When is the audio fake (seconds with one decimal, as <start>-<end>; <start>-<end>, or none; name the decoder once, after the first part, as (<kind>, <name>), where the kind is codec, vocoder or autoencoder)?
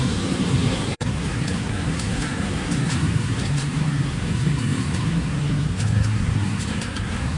0.0-7.4 (codec, SNAC)